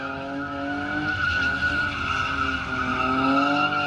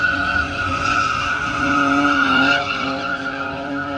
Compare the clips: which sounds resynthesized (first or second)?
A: second